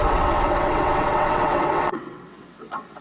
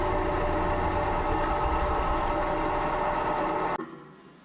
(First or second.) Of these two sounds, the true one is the second